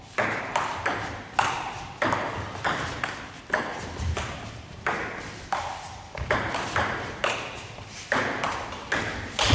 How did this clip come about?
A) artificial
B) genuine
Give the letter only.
B